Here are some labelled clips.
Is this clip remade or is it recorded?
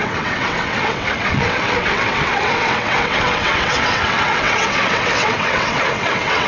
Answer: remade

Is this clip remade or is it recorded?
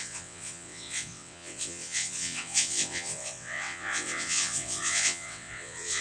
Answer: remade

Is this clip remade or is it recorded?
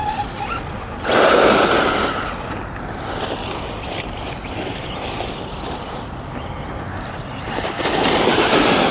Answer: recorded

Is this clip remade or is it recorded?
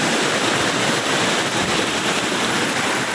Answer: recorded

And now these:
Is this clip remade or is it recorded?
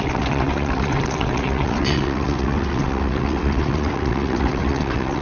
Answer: remade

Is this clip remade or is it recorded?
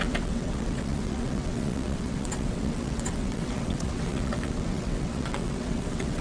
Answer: remade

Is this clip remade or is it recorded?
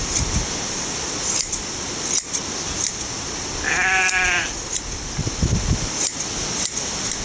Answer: recorded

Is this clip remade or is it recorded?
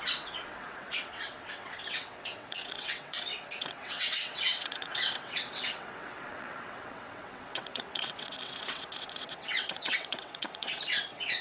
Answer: remade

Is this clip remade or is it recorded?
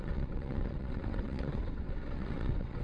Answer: remade